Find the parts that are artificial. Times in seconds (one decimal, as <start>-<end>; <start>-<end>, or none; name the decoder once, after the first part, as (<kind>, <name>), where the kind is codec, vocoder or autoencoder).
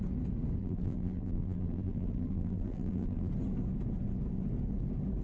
0.6-3.3 (vocoder, BigVGAN v2)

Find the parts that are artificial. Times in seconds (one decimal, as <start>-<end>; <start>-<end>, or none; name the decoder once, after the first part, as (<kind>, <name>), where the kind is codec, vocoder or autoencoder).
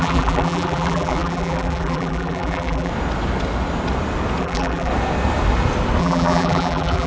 0.0-2.9 (vocoder, BigVGAN v2); 4.4-4.9; 6.0-7.1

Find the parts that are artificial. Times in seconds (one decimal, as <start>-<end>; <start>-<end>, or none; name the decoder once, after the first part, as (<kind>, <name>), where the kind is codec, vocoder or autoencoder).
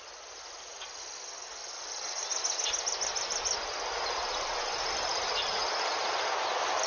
none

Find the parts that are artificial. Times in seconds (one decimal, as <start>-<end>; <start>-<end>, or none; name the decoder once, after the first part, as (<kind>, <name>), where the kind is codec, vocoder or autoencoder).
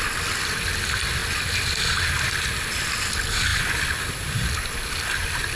none